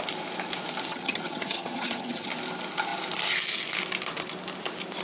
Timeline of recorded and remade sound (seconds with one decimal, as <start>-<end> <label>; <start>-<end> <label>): 0.0-0.9 recorded; 0.9-2.3 remade; 2.3-5.0 recorded